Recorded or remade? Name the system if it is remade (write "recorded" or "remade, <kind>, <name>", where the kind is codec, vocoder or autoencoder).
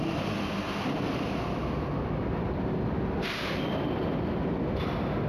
recorded